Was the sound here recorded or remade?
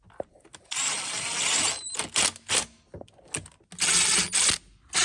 recorded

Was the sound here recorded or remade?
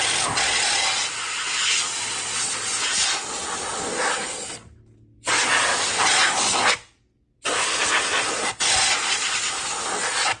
recorded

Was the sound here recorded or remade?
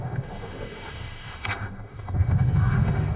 remade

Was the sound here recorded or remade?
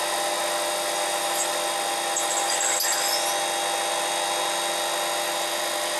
recorded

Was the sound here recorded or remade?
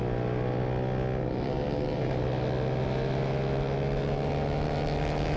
recorded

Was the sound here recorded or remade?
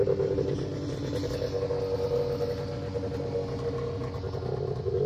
recorded